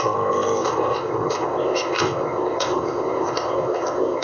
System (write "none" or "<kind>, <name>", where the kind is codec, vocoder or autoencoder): codec, ZipCodec